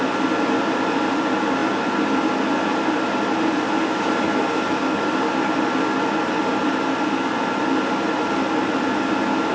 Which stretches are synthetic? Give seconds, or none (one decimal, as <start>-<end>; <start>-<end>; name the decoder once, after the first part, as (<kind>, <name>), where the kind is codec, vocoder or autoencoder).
none